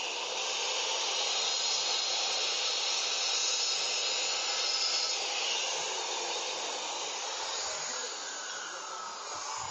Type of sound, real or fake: real